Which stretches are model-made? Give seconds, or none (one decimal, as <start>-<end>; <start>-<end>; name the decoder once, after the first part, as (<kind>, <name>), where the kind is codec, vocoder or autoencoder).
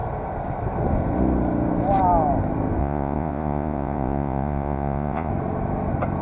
2.8-5.3 (vocoder, Vocos)